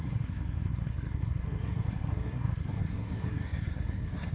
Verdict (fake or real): fake